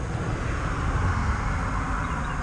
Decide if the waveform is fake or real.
real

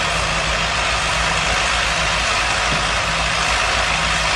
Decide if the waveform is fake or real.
real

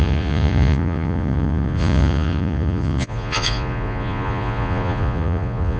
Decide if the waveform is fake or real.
fake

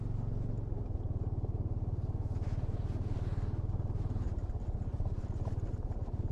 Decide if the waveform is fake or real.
real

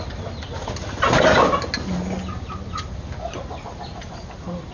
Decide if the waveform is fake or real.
real